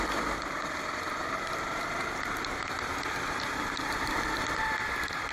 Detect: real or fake fake